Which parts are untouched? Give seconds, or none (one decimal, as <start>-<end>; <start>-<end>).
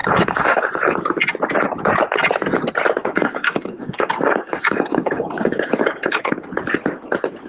0.6-3.0; 6.4-7.5